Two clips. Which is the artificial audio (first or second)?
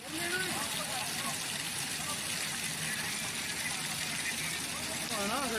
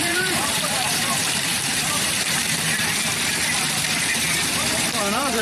second